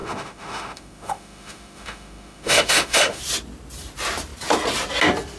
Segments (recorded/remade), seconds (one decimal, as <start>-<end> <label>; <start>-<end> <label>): 0.0-3.2 remade; 3.2-5.4 recorded